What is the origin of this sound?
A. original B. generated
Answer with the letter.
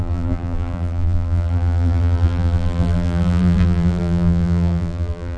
B